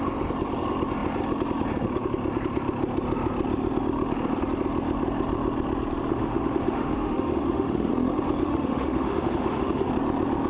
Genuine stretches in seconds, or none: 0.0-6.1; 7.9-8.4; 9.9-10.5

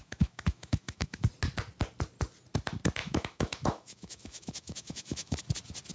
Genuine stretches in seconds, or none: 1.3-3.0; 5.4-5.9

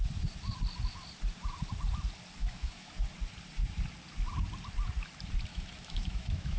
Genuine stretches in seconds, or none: 0.0-2.4; 2.9-5.5

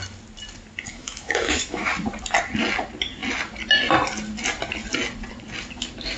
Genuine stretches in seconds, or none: 0.0-0.9; 1.9-6.2

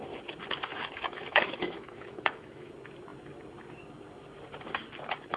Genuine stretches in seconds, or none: 0.0-0.7; 2.7-5.4

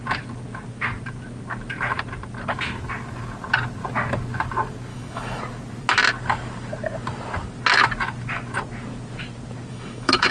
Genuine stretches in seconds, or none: 0.0-4.9; 5.4-9.7